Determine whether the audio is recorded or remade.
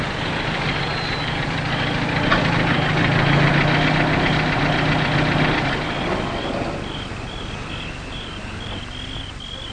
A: recorded